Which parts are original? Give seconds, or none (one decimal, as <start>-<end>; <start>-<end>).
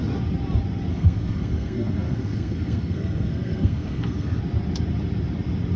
0.0-0.9; 4.4-5.8